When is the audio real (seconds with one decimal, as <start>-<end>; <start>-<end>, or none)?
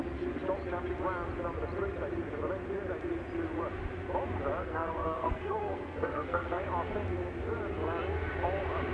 0.0-4.6; 6.6-8.9